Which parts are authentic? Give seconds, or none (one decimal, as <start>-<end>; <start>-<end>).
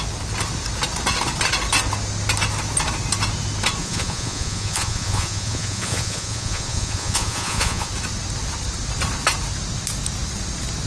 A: 0.0-3.8; 7.9-10.9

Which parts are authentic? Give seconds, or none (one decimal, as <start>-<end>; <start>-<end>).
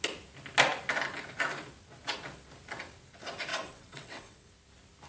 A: 0.0-3.5; 4.5-5.1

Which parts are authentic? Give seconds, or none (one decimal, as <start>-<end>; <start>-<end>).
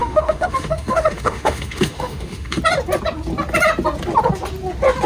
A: 2.6-5.1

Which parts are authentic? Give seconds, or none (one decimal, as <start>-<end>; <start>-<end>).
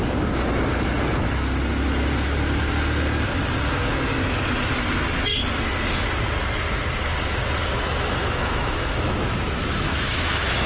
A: 0.0-7.6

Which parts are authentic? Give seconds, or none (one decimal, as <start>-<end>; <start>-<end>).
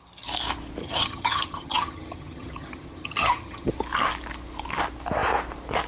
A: 0.0-0.8; 3.7-5.9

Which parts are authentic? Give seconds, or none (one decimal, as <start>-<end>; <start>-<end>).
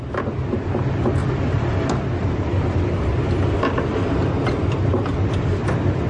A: 0.0-1.2; 1.7-2.2; 3.0-6.1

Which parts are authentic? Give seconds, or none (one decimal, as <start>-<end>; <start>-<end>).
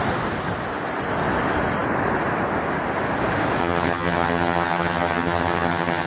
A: 0.0-3.6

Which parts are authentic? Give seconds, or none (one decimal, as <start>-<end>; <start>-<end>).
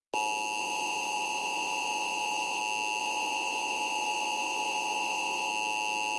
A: 0.0-0.6; 2.6-3.0; 5.5-6.2